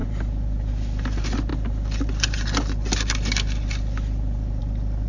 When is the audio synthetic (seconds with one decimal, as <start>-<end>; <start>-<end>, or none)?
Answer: none

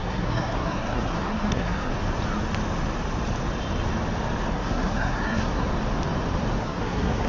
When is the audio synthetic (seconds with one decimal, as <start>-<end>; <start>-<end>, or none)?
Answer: 0.0-1.9; 4.5-5.7; 6.6-7.3